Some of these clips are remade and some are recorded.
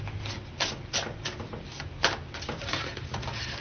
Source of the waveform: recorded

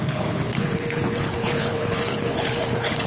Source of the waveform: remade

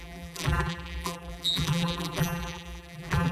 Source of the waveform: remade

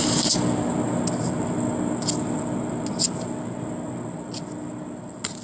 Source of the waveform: recorded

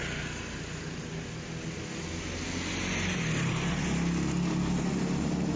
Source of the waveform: recorded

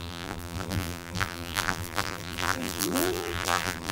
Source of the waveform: remade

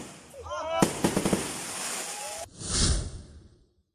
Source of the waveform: recorded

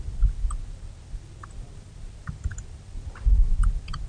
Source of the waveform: recorded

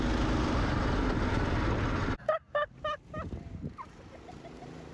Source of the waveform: recorded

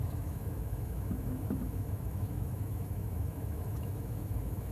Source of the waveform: remade